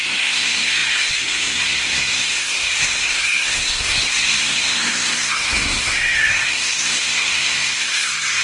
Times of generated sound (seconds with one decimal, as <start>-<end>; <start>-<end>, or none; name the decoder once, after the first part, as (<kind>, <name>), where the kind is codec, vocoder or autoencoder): 0.0-8.4 (codec, SNAC)